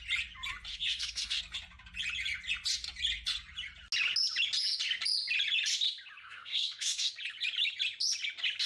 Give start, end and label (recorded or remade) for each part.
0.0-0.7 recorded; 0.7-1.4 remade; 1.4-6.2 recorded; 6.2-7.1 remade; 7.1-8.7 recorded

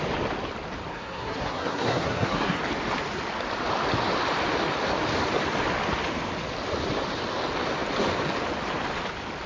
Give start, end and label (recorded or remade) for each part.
0.0-0.9 recorded; 0.9-2.6 remade; 2.6-9.5 recorded

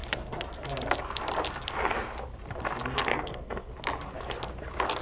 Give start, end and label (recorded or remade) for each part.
0.0-3.1 recorded; 3.1-3.7 remade; 3.7-5.0 recorded

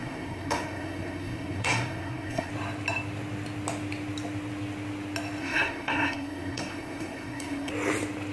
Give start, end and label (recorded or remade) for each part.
0.0-2.5 remade; 2.5-5.4 recorded; 5.4-7.7 remade; 7.7-8.3 recorded

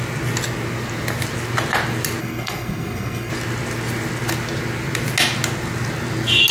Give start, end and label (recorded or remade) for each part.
0.0-2.2 recorded; 2.2-3.3 remade; 3.3-6.5 recorded